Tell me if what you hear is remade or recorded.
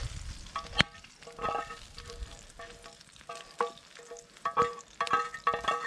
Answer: recorded